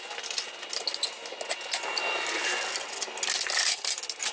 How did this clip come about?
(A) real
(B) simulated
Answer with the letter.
A